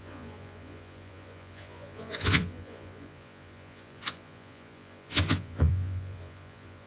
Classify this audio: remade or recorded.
remade